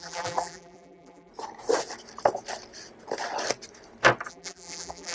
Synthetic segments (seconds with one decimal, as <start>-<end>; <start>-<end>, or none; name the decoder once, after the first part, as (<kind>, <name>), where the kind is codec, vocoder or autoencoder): 0.0-1.3 (vocoder, BigVGAN v2); 4.3-5.1